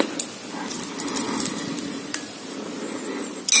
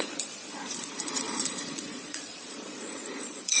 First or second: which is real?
first